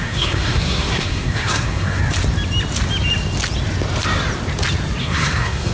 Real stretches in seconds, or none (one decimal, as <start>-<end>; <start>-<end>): 2.0-5.0